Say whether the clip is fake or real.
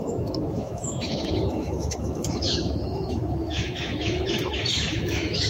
fake